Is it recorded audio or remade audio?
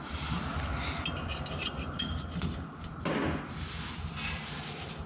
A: recorded